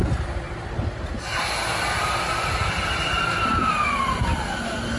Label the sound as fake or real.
real